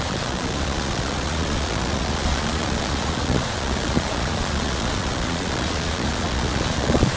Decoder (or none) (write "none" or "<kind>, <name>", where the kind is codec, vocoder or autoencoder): vocoder, Vocos